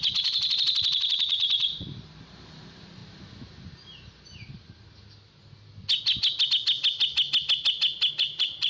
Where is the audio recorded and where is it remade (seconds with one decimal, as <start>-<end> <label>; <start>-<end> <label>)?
0.0-3.0 remade; 3.0-8.1 recorded; 8.1-8.7 remade